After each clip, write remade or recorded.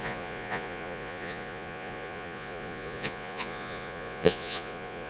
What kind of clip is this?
remade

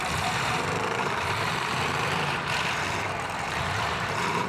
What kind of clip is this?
remade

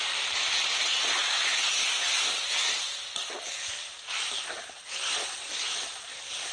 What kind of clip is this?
recorded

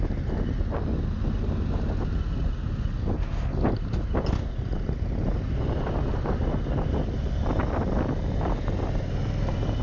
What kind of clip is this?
recorded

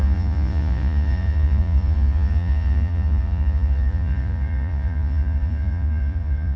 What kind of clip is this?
remade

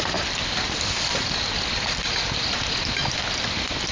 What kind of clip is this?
recorded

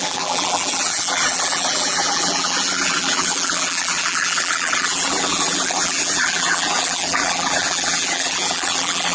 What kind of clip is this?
remade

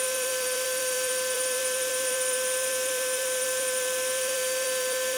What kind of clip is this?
remade